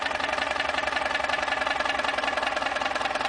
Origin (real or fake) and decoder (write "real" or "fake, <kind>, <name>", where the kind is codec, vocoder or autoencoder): real